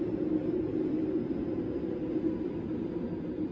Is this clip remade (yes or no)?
no